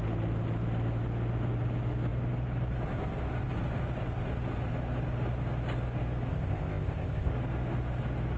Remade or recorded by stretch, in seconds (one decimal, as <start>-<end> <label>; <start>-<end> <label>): 0.0-6.3 recorded; 6.3-7.3 remade; 7.3-8.4 recorded